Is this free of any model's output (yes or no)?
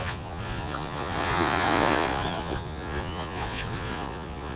no